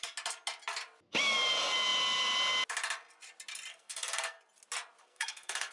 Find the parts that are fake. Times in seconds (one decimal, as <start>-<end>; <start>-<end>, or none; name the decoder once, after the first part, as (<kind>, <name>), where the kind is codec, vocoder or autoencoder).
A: 3.7-4.4 (codec, SNAC); 5.0-5.7